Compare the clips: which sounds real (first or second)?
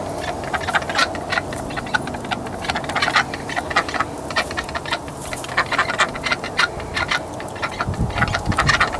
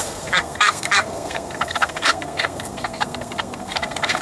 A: first